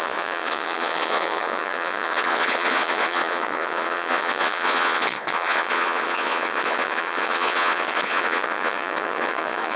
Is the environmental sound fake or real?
fake